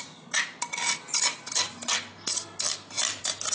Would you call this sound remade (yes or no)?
no